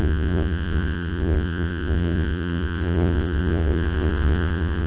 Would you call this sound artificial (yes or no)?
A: yes